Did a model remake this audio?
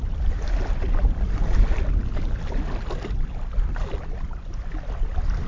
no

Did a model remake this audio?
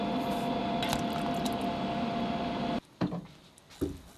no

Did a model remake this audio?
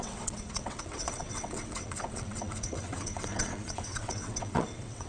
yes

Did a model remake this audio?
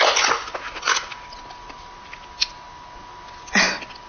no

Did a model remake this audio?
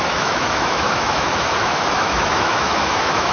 yes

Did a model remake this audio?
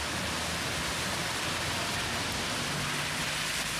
no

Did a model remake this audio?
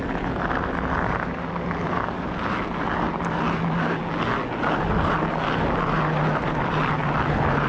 no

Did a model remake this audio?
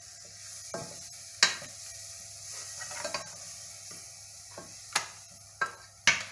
no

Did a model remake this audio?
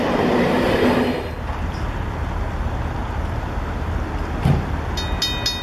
no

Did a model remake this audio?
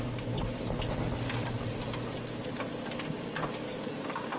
no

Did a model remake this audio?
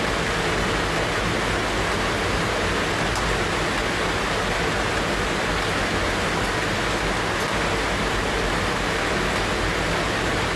no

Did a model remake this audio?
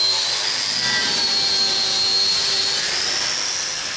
no